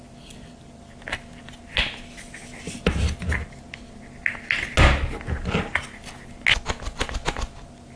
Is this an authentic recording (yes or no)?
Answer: yes